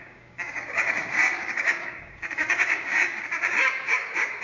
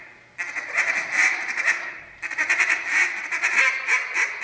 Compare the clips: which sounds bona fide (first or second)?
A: second